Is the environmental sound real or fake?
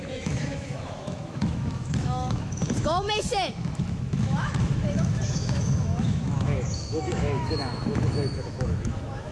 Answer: fake